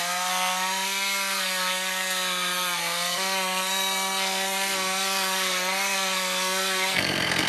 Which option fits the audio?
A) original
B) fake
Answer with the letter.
B